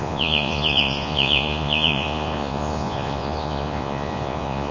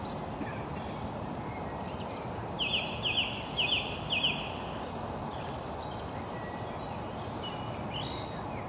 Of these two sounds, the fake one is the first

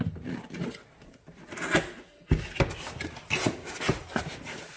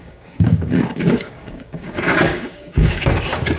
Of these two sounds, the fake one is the second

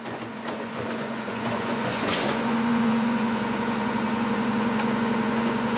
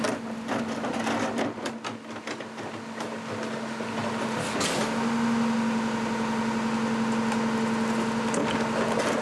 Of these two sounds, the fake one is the first